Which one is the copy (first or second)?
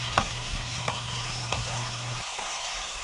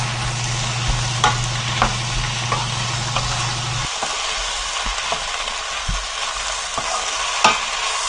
first